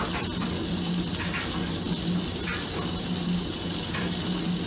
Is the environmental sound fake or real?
real